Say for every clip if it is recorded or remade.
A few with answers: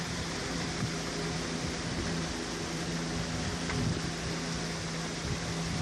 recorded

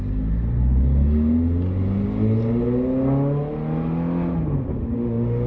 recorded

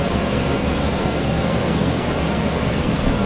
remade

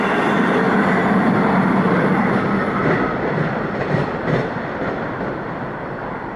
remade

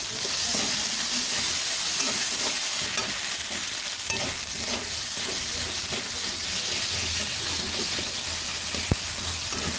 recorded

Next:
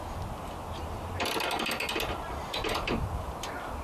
recorded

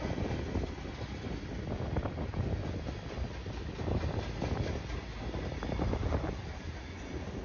recorded